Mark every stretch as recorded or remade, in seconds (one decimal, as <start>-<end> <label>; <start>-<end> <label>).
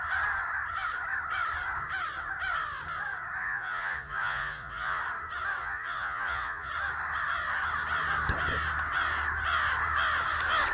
0.0-3.4 recorded; 3.4-5.0 remade; 5.0-5.6 recorded; 5.6-6.7 remade; 6.7-10.7 recorded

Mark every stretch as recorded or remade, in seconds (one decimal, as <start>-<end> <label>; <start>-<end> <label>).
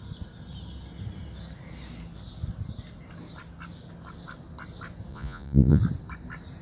0.0-5.1 recorded; 5.1-5.8 remade; 5.8-6.6 recorded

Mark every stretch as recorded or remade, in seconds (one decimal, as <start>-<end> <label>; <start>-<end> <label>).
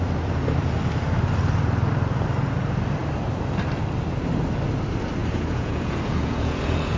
0.0-5.2 recorded; 5.2-7.0 remade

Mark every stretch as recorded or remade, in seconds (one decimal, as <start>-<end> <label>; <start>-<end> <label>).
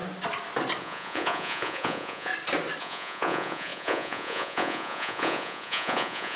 0.0-0.8 recorded; 0.8-2.3 remade; 2.3-2.8 recorded; 2.8-6.4 remade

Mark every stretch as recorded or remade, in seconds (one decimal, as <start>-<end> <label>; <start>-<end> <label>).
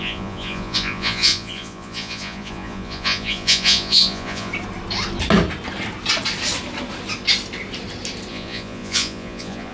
0.0-4.5 remade; 4.5-8.3 recorded; 8.3-9.7 remade